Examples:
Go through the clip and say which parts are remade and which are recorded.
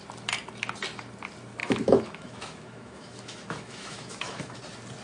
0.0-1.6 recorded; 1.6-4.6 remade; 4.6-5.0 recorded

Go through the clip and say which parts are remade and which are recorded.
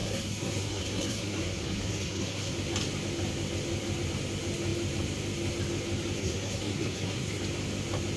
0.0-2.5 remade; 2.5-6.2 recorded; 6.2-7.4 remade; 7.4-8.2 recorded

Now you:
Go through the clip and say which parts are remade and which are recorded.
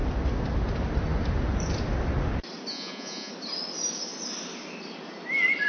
0.0-2.7 recorded; 2.7-3.3 remade; 3.3-5.7 recorded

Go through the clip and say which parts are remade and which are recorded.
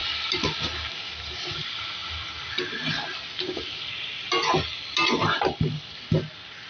0.0-6.7 recorded